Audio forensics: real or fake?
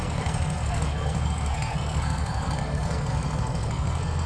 fake